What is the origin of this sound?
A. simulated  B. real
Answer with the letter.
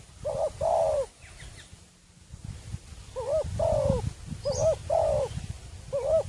B